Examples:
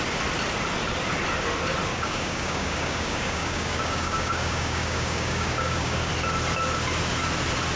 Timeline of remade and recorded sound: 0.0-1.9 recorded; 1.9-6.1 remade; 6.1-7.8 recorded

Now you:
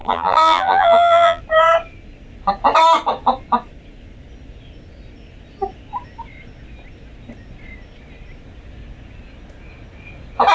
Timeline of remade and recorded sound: 0.0-1.4 remade; 1.4-10.5 recorded

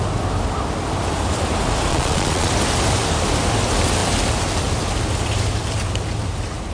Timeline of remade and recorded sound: 0.0-1.9 recorded; 1.9-2.5 remade; 2.5-6.7 recorded